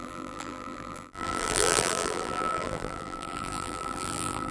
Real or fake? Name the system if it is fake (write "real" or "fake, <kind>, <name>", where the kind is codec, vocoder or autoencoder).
fake, vocoder, BigVGAN v2